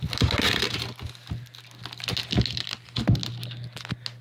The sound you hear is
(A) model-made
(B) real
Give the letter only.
B